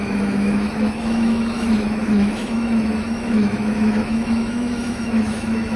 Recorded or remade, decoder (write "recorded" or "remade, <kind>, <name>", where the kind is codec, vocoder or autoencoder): remade, autoencoder, DAC-VAE